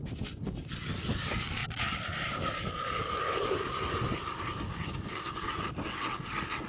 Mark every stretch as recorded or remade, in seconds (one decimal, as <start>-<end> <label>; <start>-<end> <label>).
0.0-6.7 recorded